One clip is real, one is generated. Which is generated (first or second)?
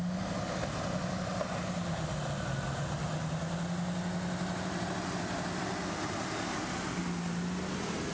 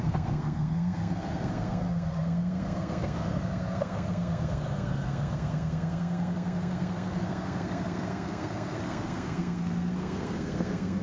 second